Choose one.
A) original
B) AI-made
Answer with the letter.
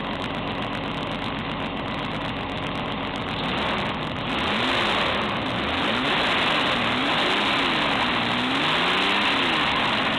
A